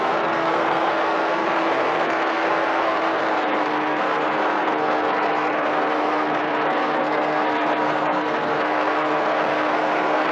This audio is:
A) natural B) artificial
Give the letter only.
B